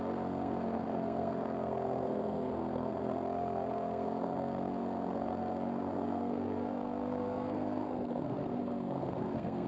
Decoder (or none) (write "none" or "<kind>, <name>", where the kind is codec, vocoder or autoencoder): codec, SNAC